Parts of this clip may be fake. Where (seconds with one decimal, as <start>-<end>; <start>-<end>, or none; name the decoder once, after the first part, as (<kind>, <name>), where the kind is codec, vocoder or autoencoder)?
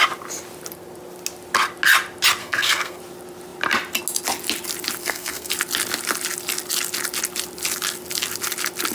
2.4-3.0 (codec, SNAC); 5.0-5.5